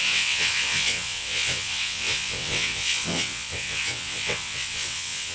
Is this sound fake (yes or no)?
yes